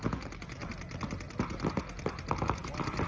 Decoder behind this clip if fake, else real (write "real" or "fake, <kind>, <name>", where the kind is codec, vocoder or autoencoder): real